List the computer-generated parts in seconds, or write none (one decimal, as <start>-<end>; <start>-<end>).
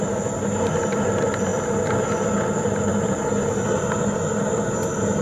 none